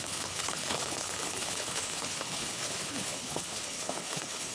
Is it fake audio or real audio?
fake